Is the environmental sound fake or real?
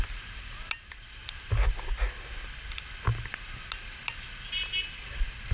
real